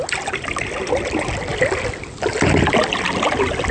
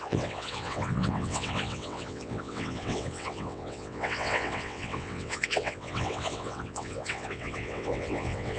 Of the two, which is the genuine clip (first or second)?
first